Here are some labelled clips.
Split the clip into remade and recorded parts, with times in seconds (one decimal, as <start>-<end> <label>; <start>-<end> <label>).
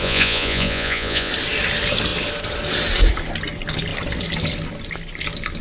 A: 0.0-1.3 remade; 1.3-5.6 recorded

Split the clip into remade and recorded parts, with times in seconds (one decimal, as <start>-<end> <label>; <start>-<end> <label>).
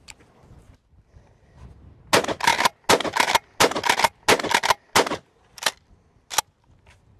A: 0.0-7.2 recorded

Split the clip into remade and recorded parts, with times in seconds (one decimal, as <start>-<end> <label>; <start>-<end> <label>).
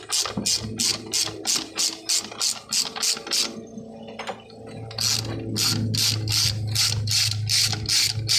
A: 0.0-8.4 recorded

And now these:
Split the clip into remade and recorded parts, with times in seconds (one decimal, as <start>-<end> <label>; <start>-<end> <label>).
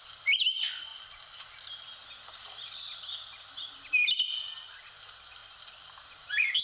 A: 0.0-6.6 recorded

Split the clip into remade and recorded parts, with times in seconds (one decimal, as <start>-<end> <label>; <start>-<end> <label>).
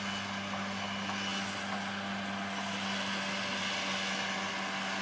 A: 0.0-5.0 recorded